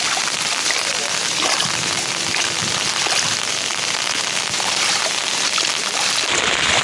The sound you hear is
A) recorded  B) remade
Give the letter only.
A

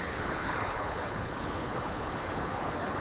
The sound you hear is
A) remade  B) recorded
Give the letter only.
A